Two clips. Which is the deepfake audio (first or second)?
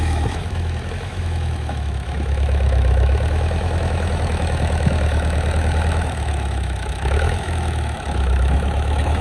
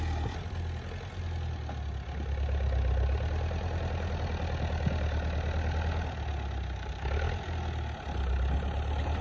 first